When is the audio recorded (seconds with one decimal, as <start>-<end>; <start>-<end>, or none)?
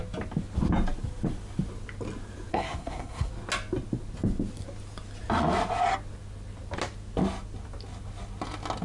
0.0-2.5; 3.3-8.8